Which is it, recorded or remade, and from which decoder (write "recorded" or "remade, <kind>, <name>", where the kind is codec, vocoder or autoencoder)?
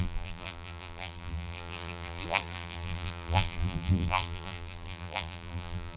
remade, vocoder, BigVGAN v2